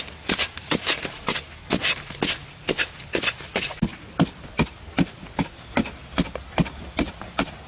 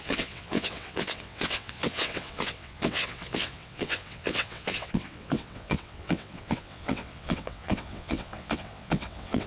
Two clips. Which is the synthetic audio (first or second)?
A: second